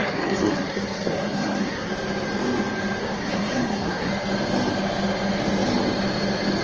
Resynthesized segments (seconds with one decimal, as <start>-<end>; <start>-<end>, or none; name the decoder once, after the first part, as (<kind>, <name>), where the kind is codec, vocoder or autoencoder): 0.0-1.9 (codec, SNAC); 3.0-4.1